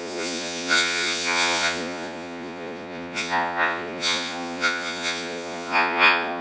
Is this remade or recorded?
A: remade